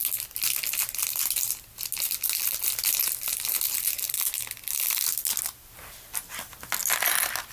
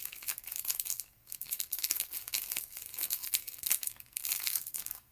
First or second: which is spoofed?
second